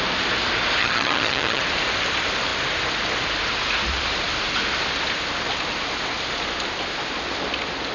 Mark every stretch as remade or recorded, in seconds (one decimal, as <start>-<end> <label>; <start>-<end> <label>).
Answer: 0.0-0.8 recorded; 0.8-1.6 remade; 1.6-7.9 recorded